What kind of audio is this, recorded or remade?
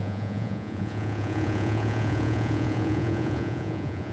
remade